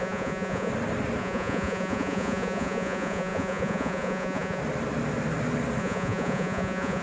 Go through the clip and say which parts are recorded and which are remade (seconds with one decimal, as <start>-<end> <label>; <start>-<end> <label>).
0.0-0.7 remade; 0.7-1.2 recorded; 1.2-4.6 remade; 4.6-5.8 recorded; 5.8-7.0 remade